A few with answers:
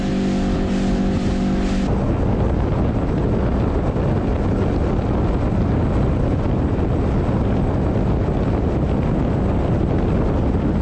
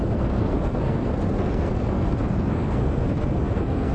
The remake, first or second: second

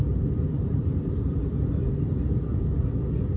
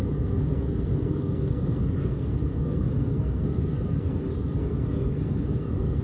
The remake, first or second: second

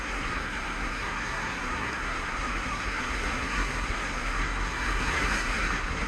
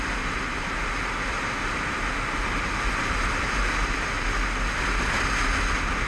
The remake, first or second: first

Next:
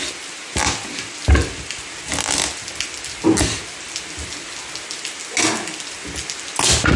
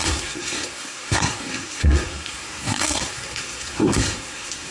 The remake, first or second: second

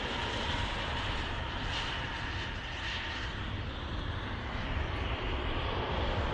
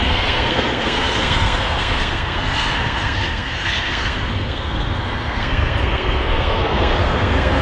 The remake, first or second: second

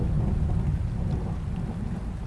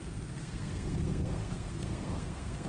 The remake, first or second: second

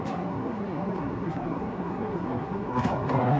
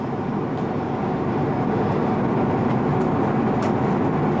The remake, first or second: first